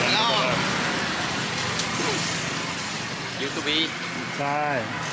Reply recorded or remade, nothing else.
recorded